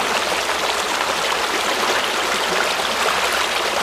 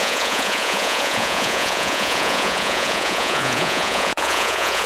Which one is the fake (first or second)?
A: second